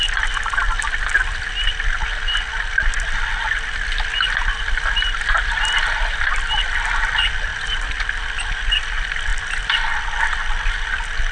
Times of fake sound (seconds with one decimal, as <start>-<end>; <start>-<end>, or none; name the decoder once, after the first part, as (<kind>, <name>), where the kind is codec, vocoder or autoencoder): none